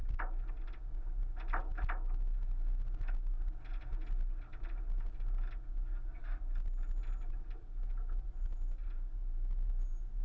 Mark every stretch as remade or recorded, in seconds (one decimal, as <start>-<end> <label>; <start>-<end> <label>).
0.0-10.2 recorded